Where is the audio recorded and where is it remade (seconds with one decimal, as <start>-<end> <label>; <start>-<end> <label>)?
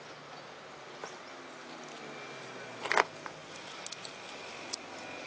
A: 0.0-5.3 recorded